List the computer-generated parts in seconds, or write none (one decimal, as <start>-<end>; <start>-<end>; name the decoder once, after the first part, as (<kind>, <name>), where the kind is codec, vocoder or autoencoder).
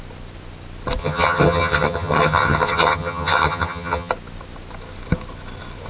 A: 1.0-4.1 (vocoder, HiFi-GAN)